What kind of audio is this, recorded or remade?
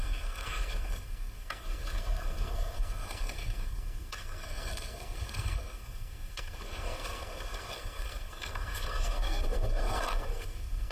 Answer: remade